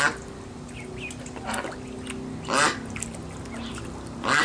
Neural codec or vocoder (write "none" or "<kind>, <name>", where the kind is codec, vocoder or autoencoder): none